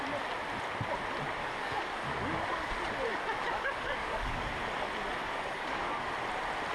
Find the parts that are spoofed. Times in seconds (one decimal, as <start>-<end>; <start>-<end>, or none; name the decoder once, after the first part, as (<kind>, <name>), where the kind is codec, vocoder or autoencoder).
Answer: 1.4-2.7 (codec, DAC); 3.1-4.4; 5.2-6.1